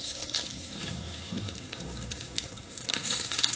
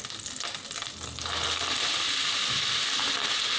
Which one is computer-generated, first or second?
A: first